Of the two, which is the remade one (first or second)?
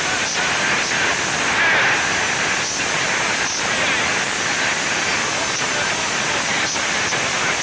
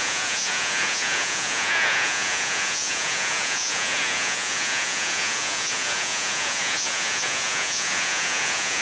second